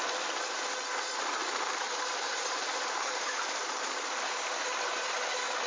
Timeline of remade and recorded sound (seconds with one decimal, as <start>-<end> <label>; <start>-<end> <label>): 0.0-1.4 recorded; 1.4-4.3 remade; 4.3-5.7 recorded